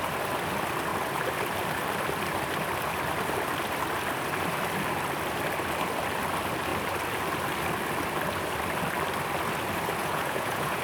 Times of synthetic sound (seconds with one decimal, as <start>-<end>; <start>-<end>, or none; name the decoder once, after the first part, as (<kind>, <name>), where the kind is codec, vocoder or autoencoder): 10.0-10.8 (vocoder, Vocos)

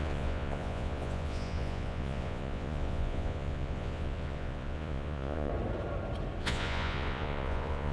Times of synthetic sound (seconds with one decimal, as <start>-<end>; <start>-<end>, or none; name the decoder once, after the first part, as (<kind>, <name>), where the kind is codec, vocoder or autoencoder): 0.0-5.5 (vocoder, Vocos); 6.4-7.9

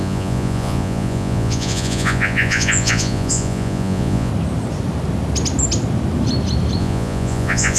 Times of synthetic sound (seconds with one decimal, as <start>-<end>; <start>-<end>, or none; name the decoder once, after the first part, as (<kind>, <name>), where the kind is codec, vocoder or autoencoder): 0.0-4.3 (vocoder, Vocos); 6.8-7.8